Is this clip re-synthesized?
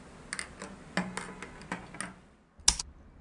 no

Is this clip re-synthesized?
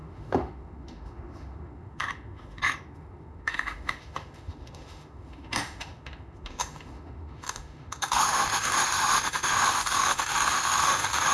yes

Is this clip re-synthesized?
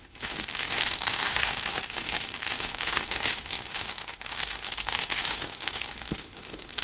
yes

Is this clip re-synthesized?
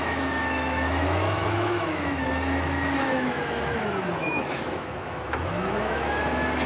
yes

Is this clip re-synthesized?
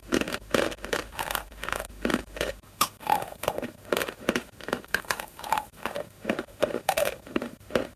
yes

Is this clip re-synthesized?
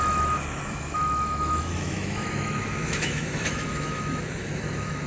yes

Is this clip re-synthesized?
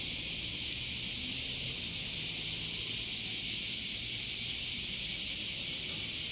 no